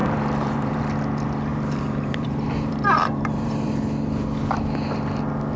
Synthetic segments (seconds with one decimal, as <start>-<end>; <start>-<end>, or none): 0.0-0.8; 1.5-3.7